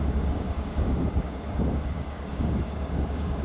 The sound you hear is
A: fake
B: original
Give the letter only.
A